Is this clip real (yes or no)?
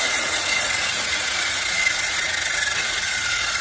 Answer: no